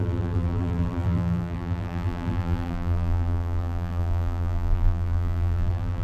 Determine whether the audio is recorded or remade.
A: remade